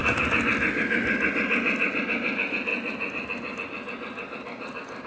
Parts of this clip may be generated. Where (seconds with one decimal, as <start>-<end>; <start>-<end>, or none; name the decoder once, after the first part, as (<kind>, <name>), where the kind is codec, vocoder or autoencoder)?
none